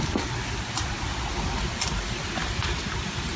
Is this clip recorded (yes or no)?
yes